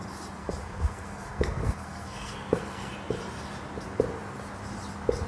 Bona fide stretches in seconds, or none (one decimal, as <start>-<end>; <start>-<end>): 0.0-0.4; 2.9-5.3